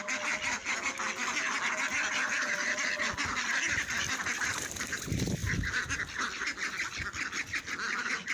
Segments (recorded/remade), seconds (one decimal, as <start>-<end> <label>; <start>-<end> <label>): 0.0-8.3 recorded